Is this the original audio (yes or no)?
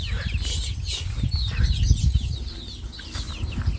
yes